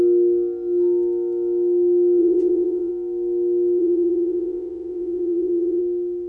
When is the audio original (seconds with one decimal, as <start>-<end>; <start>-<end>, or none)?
0.0-2.2; 2.9-3.8; 5.8-6.3